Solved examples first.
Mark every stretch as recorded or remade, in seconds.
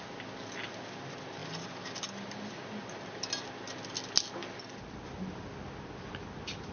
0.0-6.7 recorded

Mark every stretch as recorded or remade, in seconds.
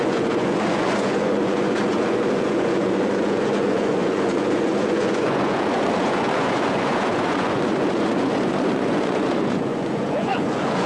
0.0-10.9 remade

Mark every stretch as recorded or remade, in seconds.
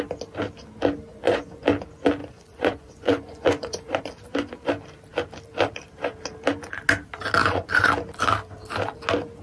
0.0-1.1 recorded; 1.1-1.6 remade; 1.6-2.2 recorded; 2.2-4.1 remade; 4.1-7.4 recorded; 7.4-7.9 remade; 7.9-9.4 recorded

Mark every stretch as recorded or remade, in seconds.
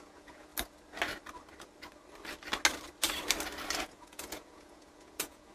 0.0-0.5 remade; 0.5-3.8 recorded; 3.8-5.5 remade